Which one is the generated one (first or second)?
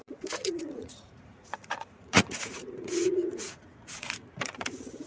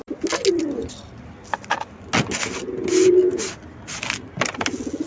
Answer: first